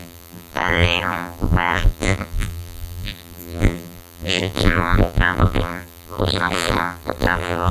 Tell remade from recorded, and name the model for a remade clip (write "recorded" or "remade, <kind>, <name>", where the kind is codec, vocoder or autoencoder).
remade, vocoder, BigVGAN v2